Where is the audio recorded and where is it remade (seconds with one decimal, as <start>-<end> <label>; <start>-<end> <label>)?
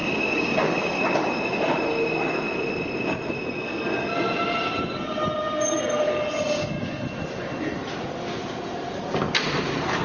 0.0-1.0 remade; 1.0-10.0 recorded